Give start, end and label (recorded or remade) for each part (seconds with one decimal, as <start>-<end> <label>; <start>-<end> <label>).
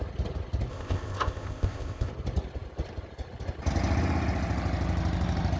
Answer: 0.0-0.7 recorded; 0.7-2.1 remade; 2.1-5.6 recorded